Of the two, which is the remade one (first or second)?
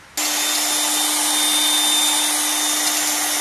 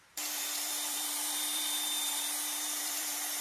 second